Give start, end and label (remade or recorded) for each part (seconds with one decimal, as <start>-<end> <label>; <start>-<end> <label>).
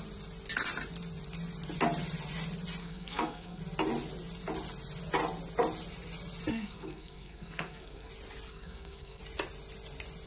0.0-2.8 recorded; 2.8-3.6 remade; 3.6-6.5 recorded; 6.5-8.1 remade; 8.1-8.5 recorded; 8.5-9.2 remade; 9.2-10.3 recorded